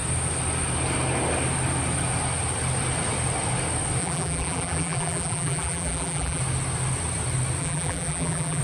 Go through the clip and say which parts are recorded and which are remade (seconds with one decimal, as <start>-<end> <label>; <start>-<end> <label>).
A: 0.0-4.0 recorded; 4.0-6.4 remade; 6.4-7.6 recorded; 7.6-8.6 remade